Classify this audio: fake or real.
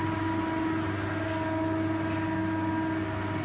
real